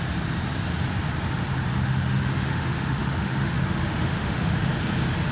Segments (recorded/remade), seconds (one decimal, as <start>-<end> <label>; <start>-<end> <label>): 0.0-1.7 recorded; 1.7-4.7 remade; 4.7-5.3 recorded